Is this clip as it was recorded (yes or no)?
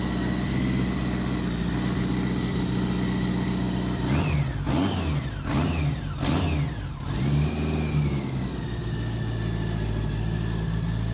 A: yes